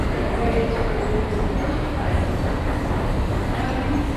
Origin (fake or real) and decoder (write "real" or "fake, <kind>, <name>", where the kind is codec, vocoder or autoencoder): real